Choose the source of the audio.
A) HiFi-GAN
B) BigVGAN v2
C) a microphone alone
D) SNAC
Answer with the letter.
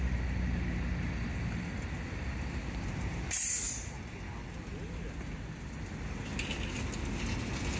C